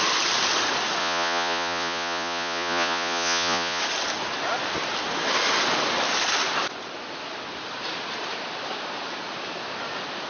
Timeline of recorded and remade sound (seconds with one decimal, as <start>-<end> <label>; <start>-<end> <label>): 0.0-1.0 recorded; 1.0-3.8 remade; 3.8-10.3 recorded